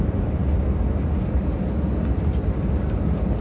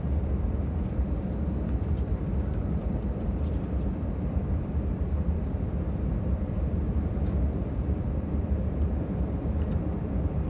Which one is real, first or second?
first